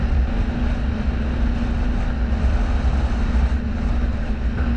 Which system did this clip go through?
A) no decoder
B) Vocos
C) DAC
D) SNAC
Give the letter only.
A